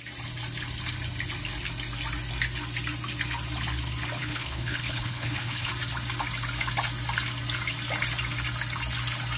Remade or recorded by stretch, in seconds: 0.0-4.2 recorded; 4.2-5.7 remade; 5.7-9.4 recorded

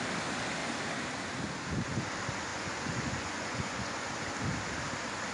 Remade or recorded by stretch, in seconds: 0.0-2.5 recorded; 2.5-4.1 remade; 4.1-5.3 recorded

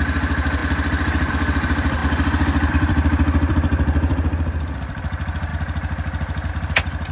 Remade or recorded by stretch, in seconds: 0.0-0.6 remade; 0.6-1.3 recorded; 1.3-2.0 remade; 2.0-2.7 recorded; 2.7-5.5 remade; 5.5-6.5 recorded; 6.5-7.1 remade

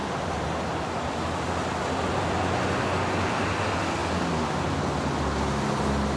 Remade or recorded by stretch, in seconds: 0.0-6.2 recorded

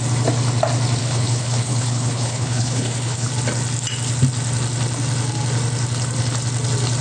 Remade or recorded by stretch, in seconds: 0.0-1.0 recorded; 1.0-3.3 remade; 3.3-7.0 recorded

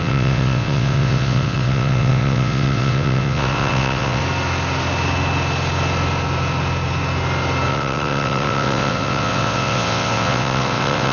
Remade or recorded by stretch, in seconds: 0.0-4.2 remade; 4.2-7.7 recorded; 7.7-11.1 remade

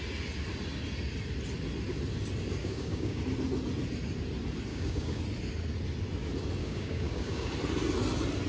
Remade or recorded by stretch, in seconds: 0.0-2.6 recorded; 2.6-3.2 remade; 3.2-4.7 recorded; 4.7-5.2 remade; 5.2-6.6 recorded; 6.6-7.5 remade; 7.5-8.5 recorded